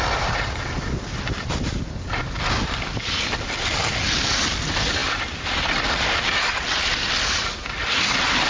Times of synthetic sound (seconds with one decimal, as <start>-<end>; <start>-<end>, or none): none